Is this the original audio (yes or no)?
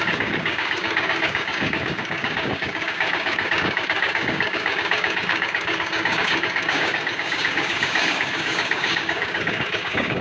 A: no